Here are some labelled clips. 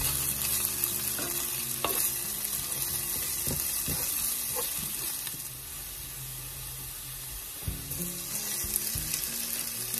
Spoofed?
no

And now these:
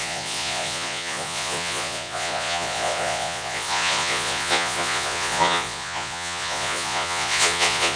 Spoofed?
yes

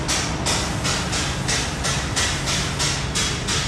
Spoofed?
no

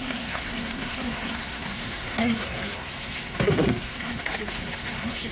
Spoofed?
yes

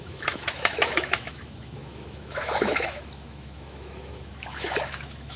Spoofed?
yes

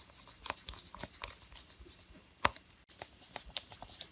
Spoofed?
no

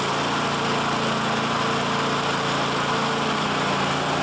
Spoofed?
no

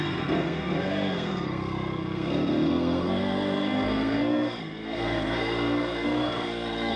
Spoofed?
yes